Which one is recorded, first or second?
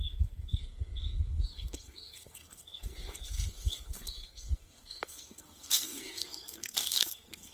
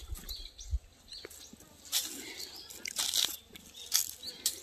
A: second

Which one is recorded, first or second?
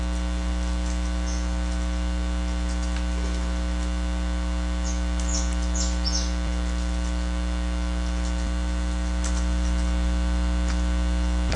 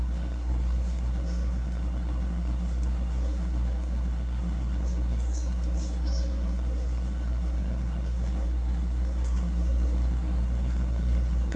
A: first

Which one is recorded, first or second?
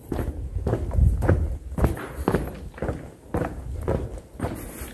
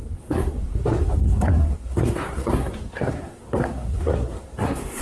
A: first